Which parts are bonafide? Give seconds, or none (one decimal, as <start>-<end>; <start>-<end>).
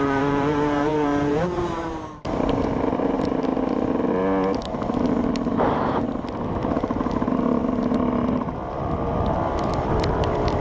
3.5-6.8; 7.6-9.9